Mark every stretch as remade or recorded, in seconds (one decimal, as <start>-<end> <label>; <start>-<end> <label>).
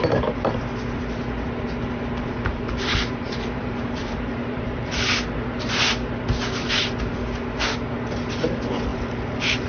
0.0-2.5 recorded; 2.5-4.9 remade; 4.9-8.9 recorded; 8.9-9.7 remade